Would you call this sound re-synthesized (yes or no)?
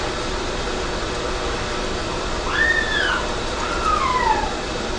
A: no